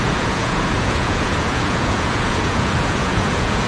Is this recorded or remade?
remade